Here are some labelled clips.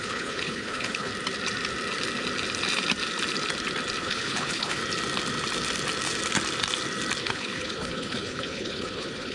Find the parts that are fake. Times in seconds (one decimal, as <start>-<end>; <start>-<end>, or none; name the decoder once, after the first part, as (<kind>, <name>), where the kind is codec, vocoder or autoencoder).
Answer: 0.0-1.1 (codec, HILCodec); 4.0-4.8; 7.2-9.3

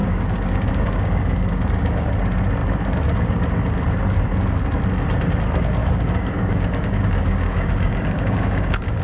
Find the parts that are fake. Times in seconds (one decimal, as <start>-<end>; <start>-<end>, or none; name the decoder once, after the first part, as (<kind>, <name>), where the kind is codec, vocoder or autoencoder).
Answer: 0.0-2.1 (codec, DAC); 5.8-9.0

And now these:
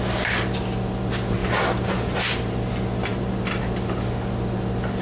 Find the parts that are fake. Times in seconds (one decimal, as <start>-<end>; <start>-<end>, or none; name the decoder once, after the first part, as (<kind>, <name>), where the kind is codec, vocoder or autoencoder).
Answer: 1.4-2.2 (vocoder, BigVGAN v2)

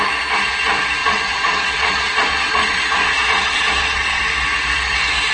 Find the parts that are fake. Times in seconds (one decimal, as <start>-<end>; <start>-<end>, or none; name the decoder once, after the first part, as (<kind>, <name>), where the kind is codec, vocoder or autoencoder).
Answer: 1.0-4.2 (vocoder, Vocos)